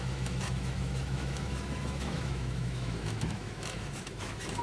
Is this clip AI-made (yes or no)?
yes